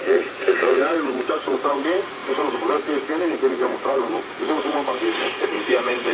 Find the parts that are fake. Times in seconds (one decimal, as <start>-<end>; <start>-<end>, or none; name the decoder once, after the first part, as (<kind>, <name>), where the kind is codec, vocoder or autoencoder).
0.0-6.1 (vocoder, Vocos)